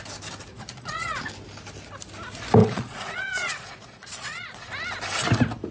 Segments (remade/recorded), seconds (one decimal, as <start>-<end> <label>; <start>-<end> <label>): 0.0-0.5 recorded; 0.5-1.2 remade; 1.2-2.6 recorded; 2.6-4.7 remade; 4.7-5.7 recorded

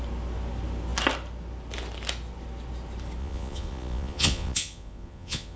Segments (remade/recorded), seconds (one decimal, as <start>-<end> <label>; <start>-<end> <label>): 0.0-3.2 recorded; 3.2-5.6 remade

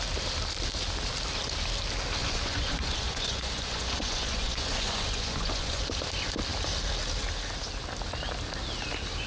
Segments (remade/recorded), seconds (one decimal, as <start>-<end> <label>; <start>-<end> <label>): 0.0-2.2 recorded; 2.2-5.8 remade; 5.8-9.3 recorded

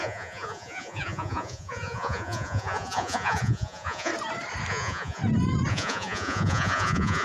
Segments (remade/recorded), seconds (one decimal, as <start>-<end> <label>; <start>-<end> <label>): 0.0-4.1 remade; 4.1-4.7 recorded; 4.7-5.2 remade; 5.2-5.7 recorded; 5.7-7.2 remade

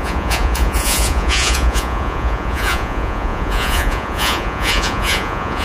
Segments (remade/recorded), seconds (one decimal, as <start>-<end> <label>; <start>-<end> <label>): 0.0-5.6 remade